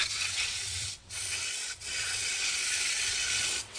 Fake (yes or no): yes